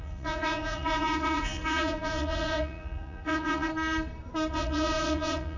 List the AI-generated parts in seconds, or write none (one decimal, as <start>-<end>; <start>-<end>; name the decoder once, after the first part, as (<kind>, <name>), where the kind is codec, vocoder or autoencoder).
0.0-3.7 (vocoder, Vocos); 4.5-5.6